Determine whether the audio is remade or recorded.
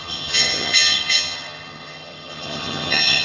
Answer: remade